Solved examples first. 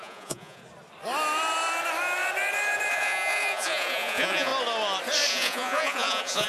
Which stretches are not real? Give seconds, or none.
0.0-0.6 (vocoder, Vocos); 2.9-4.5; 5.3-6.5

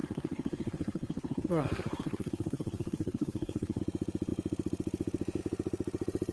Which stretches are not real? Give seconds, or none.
0.0-3.8 (codec, SNAC)

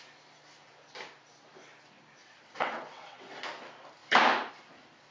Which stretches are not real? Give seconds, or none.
2.2-3.3 (vocoder, WaveNeXt)

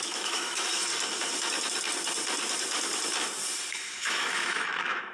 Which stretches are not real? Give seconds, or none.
0.0-0.9 (autoencoder, DAC-VAE); 3.7-5.1

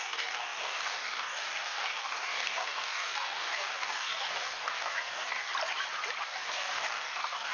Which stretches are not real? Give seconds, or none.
0.0-5.5 (codec, DAC); 6.2-7.5